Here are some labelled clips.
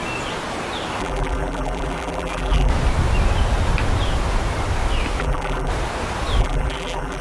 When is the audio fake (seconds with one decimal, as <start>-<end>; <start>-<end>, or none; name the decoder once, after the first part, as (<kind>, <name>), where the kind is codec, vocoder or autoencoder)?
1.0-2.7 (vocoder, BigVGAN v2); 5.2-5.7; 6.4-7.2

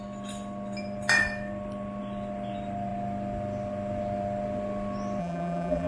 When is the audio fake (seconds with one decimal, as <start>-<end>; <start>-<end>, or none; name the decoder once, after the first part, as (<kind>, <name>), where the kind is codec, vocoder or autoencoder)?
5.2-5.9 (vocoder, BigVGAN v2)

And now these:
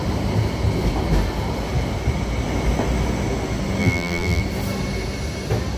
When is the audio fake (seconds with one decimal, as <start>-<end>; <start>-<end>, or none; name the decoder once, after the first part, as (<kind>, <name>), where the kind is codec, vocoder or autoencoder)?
3.8-4.4 (vocoder, BigVGAN v2)

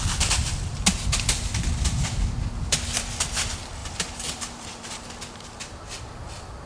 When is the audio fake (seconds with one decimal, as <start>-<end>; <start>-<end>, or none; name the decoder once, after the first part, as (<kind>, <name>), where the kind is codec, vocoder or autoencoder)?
0.4-1.0 (vocoder, BigVGAN v2); 3.8-4.9